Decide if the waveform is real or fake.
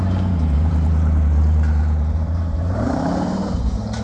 fake